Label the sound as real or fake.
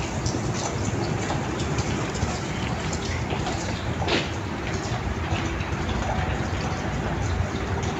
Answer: real